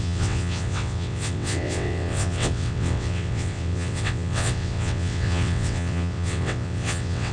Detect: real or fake fake